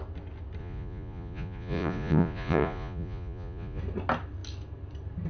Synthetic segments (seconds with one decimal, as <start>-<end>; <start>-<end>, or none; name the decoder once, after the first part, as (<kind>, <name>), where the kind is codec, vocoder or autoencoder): 0.6-3.8 (vocoder, Vocos)